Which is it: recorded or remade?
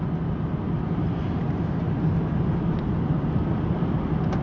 recorded